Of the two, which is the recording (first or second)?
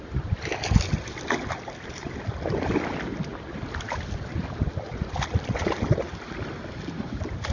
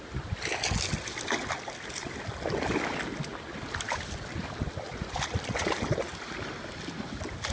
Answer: second